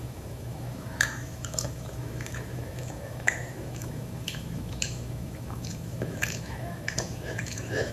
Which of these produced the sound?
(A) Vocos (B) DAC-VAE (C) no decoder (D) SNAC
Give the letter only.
B